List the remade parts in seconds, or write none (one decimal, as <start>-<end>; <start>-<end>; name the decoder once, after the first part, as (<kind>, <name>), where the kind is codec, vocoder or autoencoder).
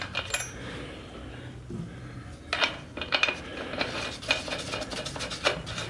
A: none